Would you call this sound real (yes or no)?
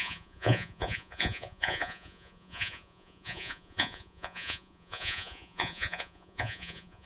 no